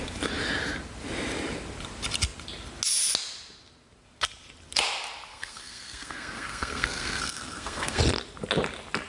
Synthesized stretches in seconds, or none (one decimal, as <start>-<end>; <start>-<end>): 5.3-8.0